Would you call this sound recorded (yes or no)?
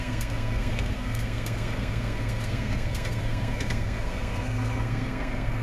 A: no